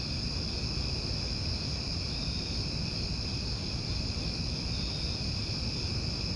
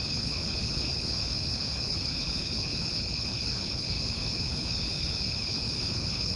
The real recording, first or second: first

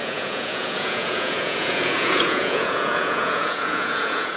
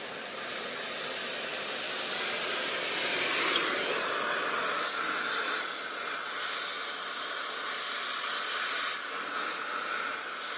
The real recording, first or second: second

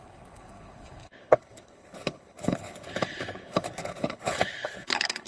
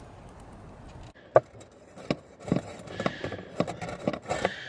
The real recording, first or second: second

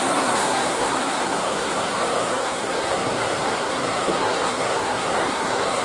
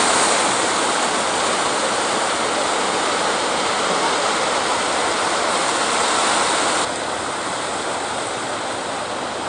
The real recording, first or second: second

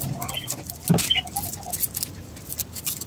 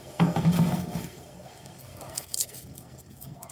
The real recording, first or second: first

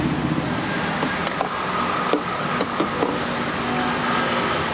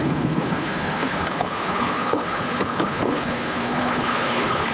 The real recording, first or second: first